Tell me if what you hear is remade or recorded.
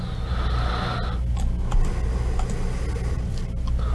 recorded